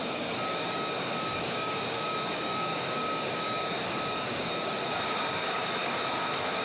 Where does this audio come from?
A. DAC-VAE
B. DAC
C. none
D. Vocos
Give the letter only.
B